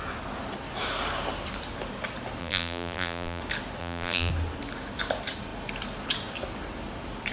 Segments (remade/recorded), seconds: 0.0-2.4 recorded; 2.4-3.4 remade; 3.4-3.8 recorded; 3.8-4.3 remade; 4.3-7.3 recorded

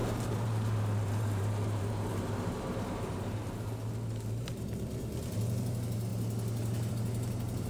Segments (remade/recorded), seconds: 0.0-3.4 remade; 3.4-7.7 recorded

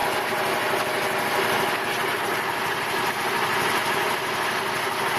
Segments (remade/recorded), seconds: 0.0-5.2 recorded

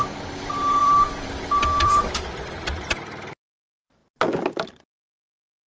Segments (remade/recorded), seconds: 0.0-4.0 remade; 4.0-5.7 recorded